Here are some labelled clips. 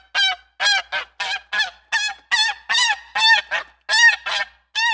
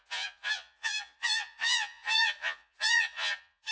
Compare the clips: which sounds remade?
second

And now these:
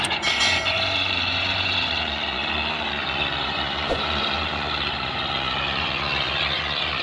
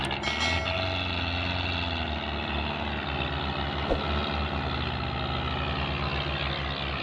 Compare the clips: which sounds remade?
first